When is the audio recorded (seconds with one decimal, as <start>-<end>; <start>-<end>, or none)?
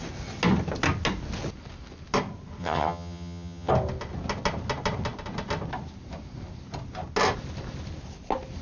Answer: 0.0-2.6; 3.7-8.6